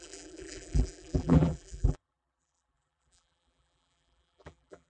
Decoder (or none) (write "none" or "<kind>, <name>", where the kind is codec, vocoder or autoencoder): vocoder, BigVGAN v2